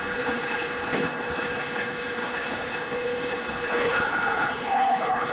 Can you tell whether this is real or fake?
fake